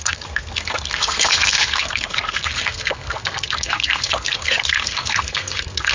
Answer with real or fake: fake